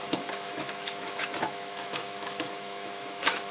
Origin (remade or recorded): remade